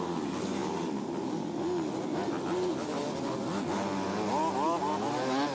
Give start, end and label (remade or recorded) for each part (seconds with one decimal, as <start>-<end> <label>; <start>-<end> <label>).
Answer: 0.0-5.5 recorded